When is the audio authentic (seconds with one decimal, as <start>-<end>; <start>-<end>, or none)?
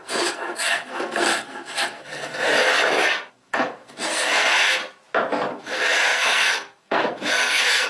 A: 2.5-3.3; 4.8-5.5